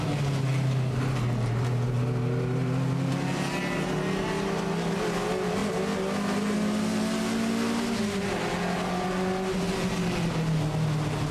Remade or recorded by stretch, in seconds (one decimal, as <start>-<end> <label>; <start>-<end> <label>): 0.0-11.3 recorded